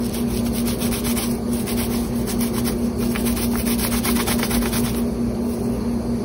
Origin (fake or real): real